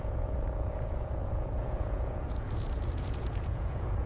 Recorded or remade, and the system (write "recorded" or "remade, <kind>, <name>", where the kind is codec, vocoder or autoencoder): remade, vocoder, Vocos